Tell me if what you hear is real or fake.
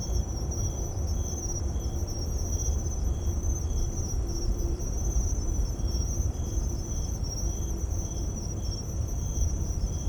fake